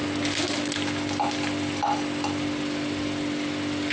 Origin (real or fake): real